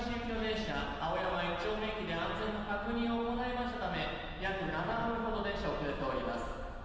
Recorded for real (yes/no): yes